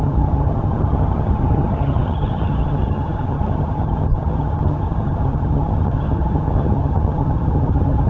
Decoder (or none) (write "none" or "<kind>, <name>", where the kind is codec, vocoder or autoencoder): vocoder, HiFi-GAN